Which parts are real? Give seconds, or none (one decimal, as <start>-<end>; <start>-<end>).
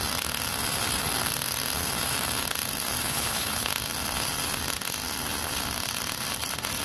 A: 0.0-3.0; 3.7-6.8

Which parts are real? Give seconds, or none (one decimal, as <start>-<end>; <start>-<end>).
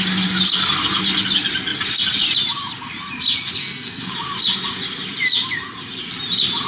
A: 0.0-3.6; 4.1-6.7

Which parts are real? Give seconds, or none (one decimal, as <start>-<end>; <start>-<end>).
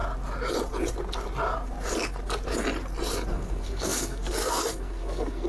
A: 0.0-3.3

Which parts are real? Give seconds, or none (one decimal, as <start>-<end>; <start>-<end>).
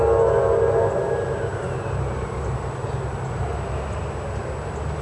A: 0.0-5.0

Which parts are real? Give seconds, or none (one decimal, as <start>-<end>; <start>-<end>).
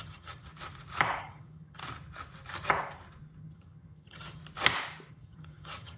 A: 0.5-1.2; 1.8-3.4; 4.4-5.1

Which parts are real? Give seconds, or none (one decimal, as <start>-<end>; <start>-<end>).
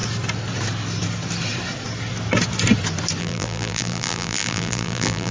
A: 0.0-3.2